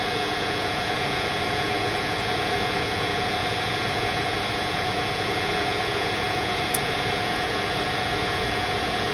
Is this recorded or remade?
remade